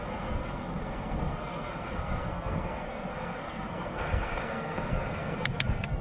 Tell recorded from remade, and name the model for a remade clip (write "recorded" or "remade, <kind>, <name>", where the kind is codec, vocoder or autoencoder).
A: remade, codec, SNAC